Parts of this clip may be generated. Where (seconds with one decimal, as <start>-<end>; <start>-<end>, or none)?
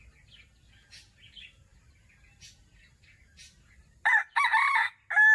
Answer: none